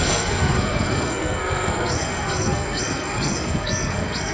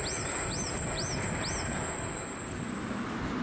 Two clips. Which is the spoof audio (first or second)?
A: first